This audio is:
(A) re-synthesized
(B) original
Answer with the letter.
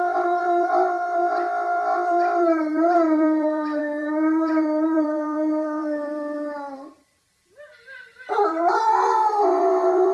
A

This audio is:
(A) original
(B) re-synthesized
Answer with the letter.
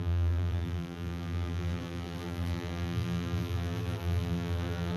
B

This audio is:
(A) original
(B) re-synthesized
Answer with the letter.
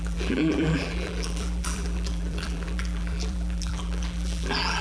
B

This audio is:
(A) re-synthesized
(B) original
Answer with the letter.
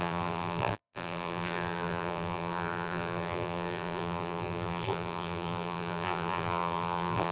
A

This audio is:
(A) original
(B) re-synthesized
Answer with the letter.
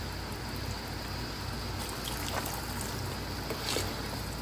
A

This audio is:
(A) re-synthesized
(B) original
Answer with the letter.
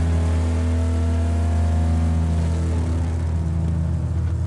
B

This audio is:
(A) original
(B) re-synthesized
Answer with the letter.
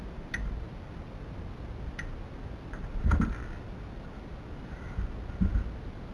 A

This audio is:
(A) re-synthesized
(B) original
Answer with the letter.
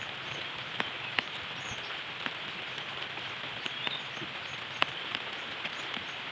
B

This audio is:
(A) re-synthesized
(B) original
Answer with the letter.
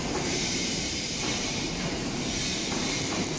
A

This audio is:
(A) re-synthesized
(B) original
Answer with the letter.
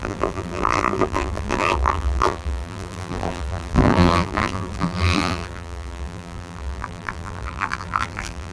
A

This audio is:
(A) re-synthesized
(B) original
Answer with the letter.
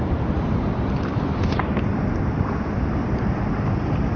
A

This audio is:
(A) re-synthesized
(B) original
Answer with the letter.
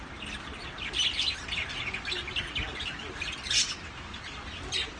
B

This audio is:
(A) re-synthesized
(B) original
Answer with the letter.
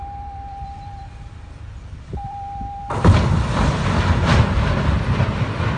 A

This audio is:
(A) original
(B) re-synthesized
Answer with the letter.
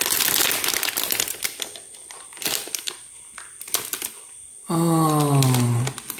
A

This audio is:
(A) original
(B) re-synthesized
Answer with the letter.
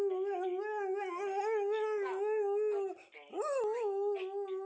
A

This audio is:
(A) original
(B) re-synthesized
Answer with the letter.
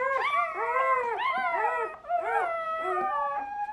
B